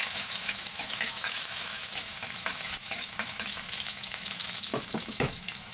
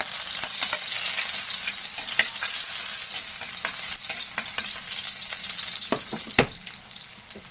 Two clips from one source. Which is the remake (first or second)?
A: first